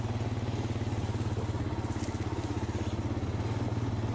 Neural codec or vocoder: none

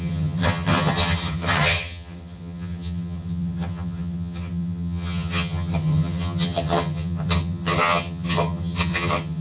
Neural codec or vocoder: vocoder, HiFi-GAN